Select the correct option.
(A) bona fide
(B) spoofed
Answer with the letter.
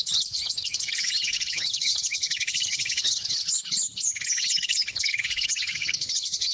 B